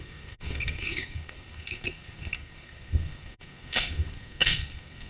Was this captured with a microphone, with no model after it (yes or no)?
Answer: no